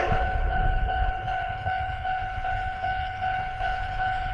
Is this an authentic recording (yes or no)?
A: no